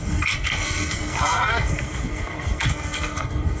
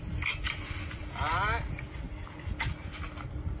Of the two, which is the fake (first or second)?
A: first